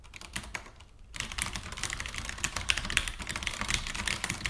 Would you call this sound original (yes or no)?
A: no